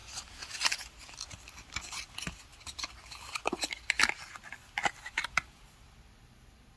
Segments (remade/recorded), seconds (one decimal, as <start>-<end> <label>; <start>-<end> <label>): 0.0-6.8 recorded